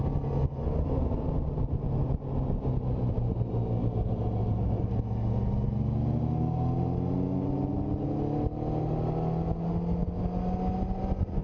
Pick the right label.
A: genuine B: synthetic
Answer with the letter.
A